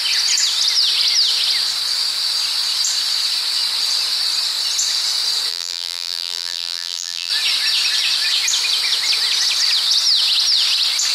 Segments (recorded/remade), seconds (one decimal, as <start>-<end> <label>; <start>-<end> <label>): 0.0-5.5 recorded; 5.5-7.3 remade; 7.3-11.1 recorded